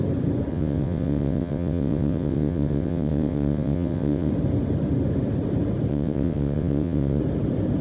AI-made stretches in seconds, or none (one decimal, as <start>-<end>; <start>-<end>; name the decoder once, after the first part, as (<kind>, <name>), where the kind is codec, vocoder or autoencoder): 0.5-4.3 (vocoder, WaveNeXt); 5.9-7.2